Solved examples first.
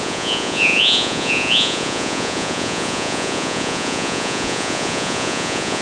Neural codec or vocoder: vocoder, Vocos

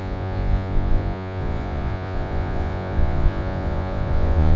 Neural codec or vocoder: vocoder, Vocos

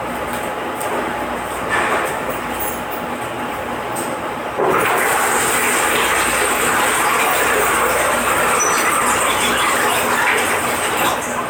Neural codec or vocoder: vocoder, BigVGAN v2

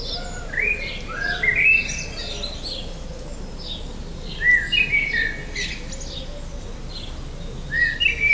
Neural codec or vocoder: none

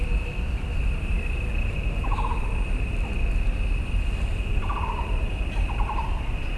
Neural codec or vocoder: none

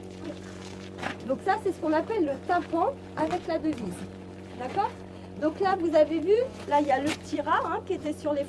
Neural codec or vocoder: vocoder, Vocos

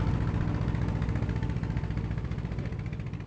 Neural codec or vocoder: none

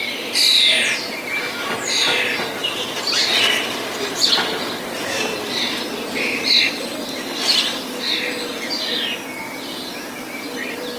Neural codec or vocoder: none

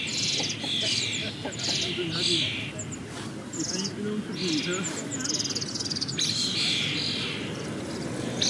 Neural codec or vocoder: none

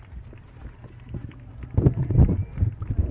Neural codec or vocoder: none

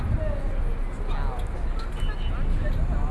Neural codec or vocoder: none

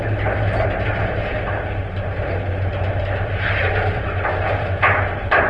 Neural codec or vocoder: vocoder, BigVGAN v2